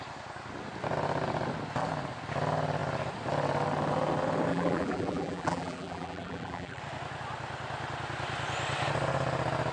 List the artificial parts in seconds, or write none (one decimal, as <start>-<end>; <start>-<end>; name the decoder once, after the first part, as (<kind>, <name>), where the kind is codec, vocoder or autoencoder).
4.5-6.8 (vocoder, BigVGAN v2)